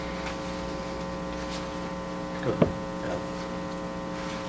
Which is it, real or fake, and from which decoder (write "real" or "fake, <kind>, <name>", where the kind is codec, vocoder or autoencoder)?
real